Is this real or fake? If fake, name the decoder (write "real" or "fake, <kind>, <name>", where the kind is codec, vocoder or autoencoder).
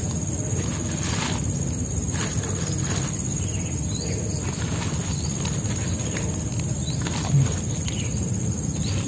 real